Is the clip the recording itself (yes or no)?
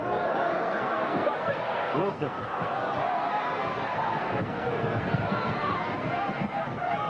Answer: no